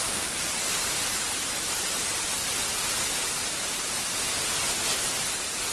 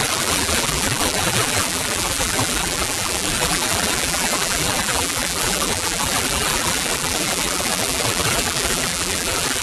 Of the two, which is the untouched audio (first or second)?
first